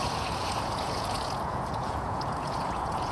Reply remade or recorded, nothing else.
remade